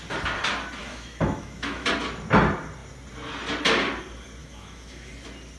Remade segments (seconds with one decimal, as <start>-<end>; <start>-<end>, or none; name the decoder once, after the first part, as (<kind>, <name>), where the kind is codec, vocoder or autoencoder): 0.8-1.9 (autoencoder, DAC-VAE); 4.4-5.1